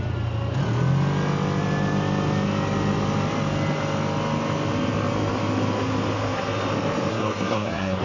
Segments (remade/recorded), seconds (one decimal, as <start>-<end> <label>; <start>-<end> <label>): 0.0-7.1 recorded; 7.1-8.0 remade